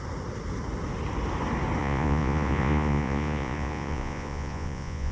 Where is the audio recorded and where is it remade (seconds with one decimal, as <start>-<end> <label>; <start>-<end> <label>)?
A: 0.0-1.8 recorded; 1.8-5.1 remade